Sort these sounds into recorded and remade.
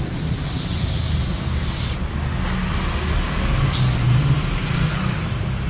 recorded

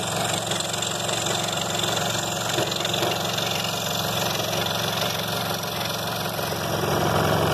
recorded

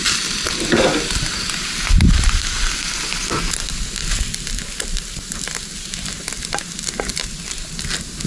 recorded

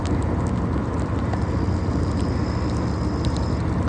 recorded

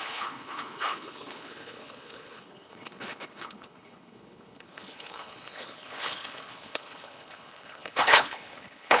remade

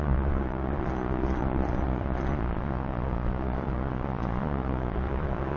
remade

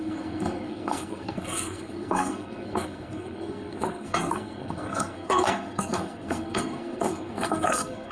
remade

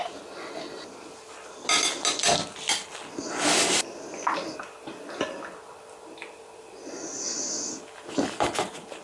recorded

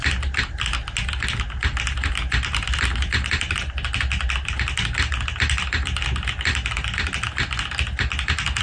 recorded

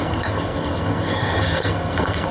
remade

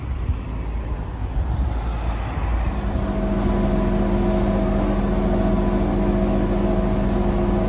recorded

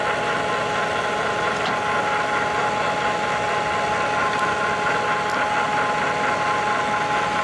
recorded